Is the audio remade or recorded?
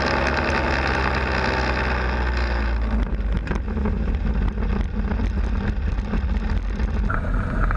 recorded